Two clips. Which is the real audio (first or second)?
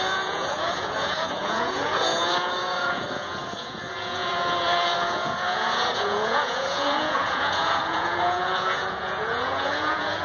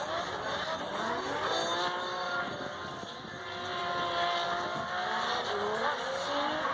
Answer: second